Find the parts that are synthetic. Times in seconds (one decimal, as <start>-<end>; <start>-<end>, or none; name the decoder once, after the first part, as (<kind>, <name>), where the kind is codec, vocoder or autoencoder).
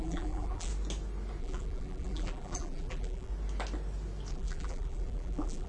0.0-0.7 (vocoder, BigVGAN v2); 1.4-3.3; 4.3-5.7